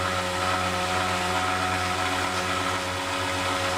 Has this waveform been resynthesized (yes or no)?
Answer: no